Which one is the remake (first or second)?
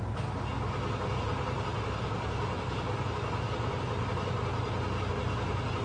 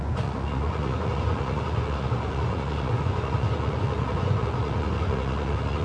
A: second